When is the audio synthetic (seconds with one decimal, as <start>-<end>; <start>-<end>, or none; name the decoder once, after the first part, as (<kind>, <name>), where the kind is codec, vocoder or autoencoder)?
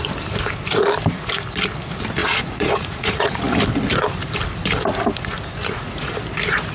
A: 2.2-3.6 (vocoder, Vocos); 5.6-6.1